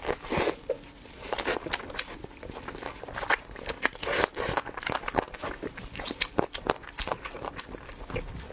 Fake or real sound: real